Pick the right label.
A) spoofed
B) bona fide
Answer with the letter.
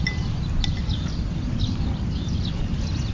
B